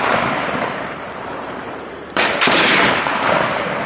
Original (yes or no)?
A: no